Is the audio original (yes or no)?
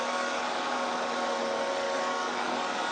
no